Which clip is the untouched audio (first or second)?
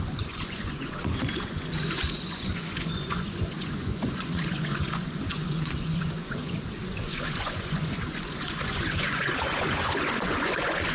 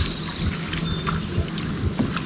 second